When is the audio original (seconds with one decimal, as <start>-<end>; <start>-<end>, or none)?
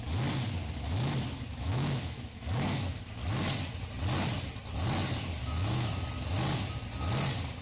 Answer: 0.0-1.5; 3.0-5.4; 6.0-7.6